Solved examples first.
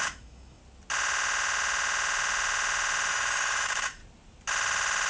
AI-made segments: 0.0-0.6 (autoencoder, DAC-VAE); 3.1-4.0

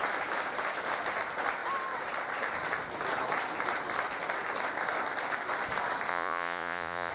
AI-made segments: 6.1-7.1 (vocoder, Vocos)

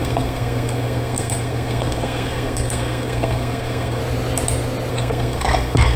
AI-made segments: 0.0-4.0 (codec, SNAC); 4.9-6.0

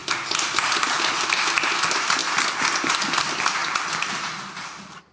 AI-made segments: 0.0-2.2 (vocoder, BigVGAN v2); 2.8-5.1

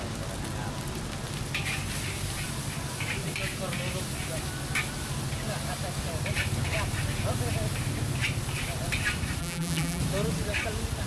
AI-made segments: 9.4-10.0 (vocoder, BigVGAN v2)

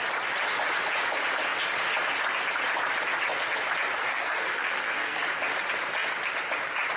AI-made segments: 4.0-5.2 (codec, SNAC)